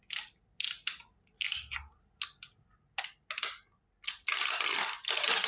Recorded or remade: recorded